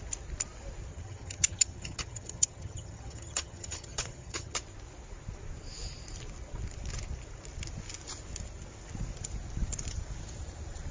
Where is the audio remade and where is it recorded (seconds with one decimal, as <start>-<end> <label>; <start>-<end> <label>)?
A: 0.0-0.9 recorded; 0.9-4.6 remade; 4.6-10.9 recorded

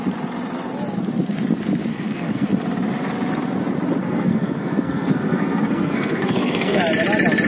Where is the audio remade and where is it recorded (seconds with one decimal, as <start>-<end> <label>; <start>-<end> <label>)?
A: 0.0-1.9 recorded; 1.9-2.5 remade; 2.5-4.0 recorded; 4.0-6.8 remade; 6.8-7.5 recorded

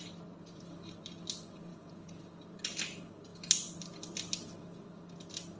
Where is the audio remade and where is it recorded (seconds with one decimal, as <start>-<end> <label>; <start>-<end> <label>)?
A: 0.0-1.7 recorded; 1.7-2.2 remade; 2.2-5.6 recorded

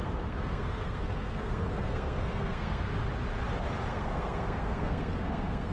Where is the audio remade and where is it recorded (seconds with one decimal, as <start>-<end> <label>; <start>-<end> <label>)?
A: 0.0-2.9 remade; 2.9-3.9 recorded; 3.9-5.7 remade

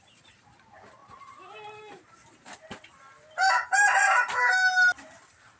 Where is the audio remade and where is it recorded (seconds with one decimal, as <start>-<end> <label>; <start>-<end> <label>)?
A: 0.0-5.6 recorded

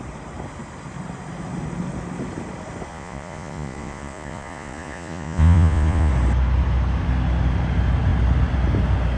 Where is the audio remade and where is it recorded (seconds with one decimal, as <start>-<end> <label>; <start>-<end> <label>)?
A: 0.0-2.9 recorded; 2.9-6.1 remade; 6.1-9.2 recorded

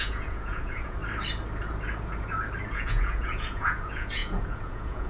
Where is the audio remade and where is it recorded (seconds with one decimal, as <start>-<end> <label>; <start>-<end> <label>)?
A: 0.0-1.0 remade; 1.0-2.7 recorded; 2.7-5.1 remade

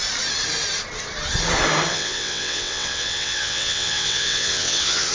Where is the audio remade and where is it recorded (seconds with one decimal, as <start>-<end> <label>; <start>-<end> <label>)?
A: 0.0-1.9 recorded; 1.9-5.1 remade